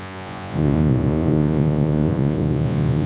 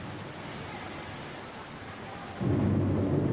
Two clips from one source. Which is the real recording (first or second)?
second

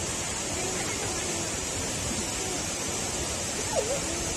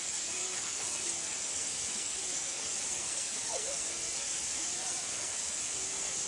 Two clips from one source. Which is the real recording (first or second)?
first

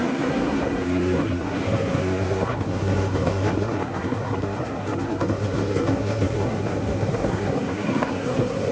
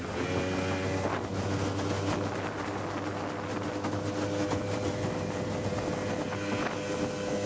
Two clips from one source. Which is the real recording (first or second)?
second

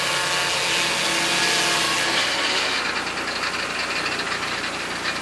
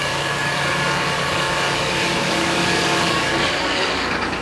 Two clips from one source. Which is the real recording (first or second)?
first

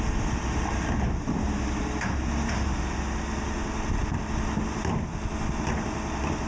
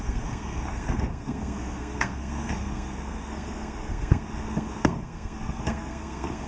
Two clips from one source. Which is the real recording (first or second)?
first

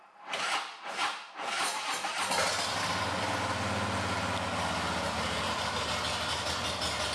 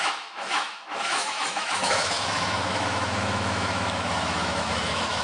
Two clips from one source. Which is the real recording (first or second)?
first